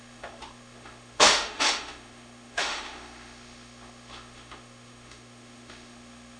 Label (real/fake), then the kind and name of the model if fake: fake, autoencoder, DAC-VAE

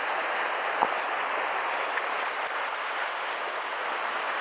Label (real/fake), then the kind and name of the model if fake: real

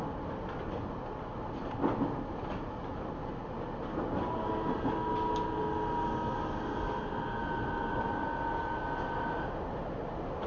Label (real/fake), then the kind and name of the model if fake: real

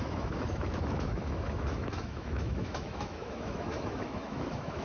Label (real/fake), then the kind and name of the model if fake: fake, autoencoder, DAC-VAE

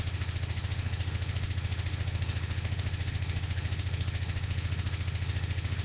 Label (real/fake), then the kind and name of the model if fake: fake, autoencoder, DAC-VAE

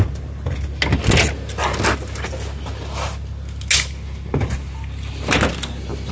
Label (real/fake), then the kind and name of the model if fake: real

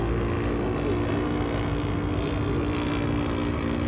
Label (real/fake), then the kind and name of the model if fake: real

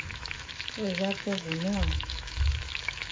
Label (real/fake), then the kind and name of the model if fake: fake, autoencoder, DAC-VAE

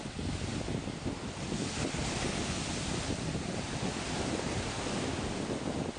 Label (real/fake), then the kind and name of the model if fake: real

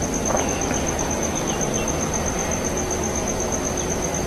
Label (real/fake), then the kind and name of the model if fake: real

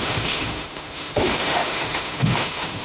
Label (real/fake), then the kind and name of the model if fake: fake, autoencoder, DAC-VAE